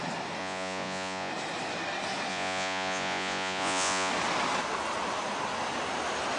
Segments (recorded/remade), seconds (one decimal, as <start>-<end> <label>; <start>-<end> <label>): 0.0-0.4 recorded; 0.4-1.3 remade; 1.3-2.3 recorded; 2.3-4.1 remade; 4.1-6.4 recorded